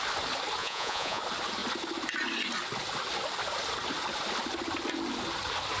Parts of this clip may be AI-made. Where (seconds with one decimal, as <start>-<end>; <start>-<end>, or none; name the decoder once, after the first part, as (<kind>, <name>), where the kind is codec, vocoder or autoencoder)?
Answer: 0.6-1.2 (vocoder, Vocos)